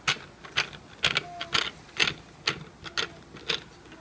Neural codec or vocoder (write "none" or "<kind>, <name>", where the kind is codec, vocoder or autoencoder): none